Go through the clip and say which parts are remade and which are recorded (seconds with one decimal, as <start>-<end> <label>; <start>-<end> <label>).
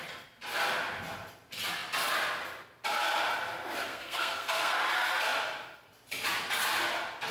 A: 0.0-3.9 recorded; 3.9-4.8 remade; 4.8-7.3 recorded